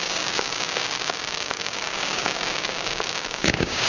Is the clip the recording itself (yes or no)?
no